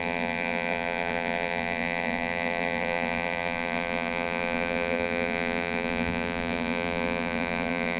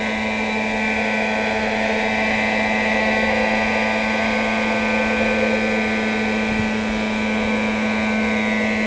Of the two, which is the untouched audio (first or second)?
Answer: second